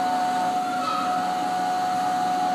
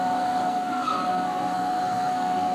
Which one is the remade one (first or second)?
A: second